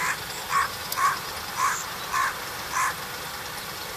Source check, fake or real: real